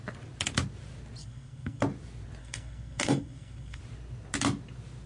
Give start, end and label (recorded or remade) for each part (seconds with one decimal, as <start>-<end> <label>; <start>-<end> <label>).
0.0-1.2 recorded; 1.2-1.8 remade; 1.8-2.4 recorded; 2.4-3.8 remade; 3.8-5.1 recorded